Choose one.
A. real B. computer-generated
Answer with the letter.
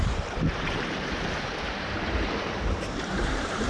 B